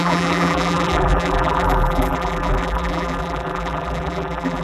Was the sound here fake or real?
fake